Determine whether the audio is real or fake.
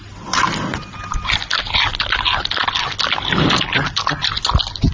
real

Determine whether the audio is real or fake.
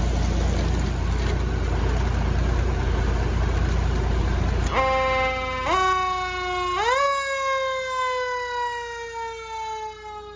real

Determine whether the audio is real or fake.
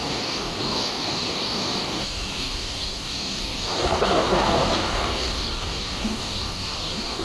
fake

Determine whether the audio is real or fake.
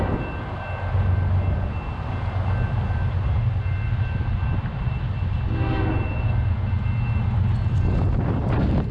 real